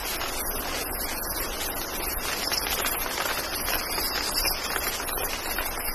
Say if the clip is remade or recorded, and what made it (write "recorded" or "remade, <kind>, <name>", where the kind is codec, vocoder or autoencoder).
recorded